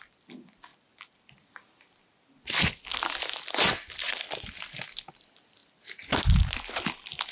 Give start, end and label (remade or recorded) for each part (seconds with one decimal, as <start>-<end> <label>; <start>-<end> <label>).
0.0-7.3 recorded